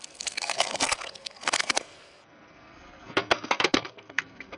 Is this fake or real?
fake